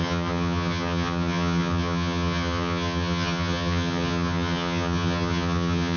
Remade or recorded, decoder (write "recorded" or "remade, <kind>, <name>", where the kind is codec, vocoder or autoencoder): remade, vocoder, HiFi-GAN